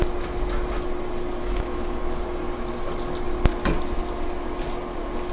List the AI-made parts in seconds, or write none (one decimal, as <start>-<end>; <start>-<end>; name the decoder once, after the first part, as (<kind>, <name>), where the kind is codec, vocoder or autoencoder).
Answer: 1.4-2.0 (autoencoder, DAC-VAE)